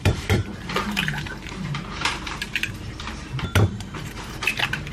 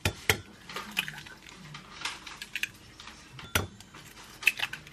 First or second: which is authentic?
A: second